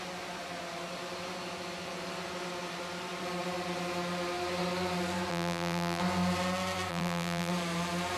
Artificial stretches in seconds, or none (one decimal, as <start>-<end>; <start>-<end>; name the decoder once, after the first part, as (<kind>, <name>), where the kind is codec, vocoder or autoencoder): 5.3-6.0 (vocoder, BigVGAN v2); 6.9-7.5